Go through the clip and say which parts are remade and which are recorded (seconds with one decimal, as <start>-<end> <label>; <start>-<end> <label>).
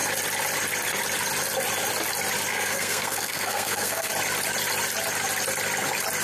0.0-2.5 recorded; 2.5-4.1 remade; 4.1-6.2 recorded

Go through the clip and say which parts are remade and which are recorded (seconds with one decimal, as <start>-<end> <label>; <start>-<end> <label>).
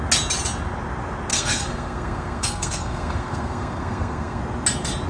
0.0-1.3 recorded; 1.3-4.4 remade; 4.4-5.1 recorded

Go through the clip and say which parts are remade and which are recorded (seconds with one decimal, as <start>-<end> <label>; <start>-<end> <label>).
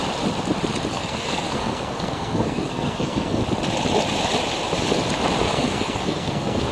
0.0-0.9 recorded; 0.9-3.4 remade; 3.4-5.4 recorded; 5.4-6.7 remade